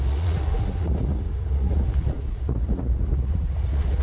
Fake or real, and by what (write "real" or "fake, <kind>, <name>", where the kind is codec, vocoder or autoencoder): fake, vocoder, Vocos